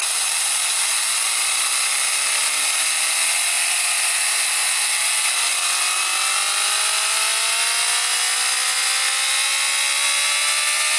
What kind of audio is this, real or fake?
real